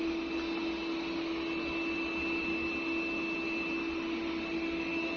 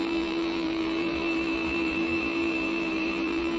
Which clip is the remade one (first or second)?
second